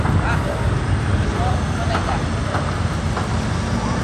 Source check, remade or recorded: recorded